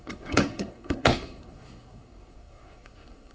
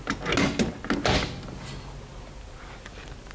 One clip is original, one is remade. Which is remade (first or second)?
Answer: first